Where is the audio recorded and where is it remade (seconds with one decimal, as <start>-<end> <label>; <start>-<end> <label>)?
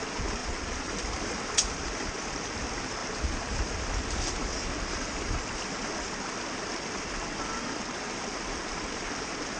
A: 0.0-0.4 recorded; 0.4-0.9 remade; 0.9-9.6 recorded